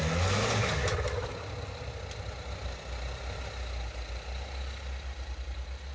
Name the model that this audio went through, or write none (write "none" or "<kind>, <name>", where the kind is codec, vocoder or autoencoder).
none